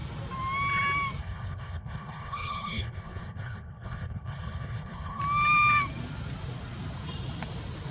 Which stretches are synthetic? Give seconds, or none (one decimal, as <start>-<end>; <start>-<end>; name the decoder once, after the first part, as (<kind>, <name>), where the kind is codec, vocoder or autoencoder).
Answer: 1.2-5.2 (codec, HILCodec)